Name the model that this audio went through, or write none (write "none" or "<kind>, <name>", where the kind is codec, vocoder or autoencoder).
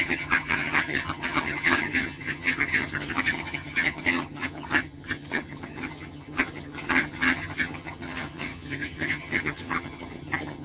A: vocoder, HiFi-GAN